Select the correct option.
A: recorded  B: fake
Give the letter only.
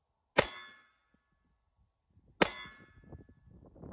A